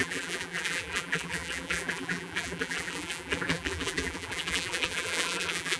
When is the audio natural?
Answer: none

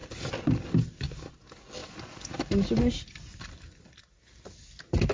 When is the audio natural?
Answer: 1.3-1.8; 4.0-5.1